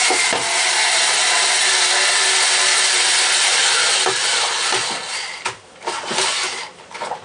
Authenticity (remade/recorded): recorded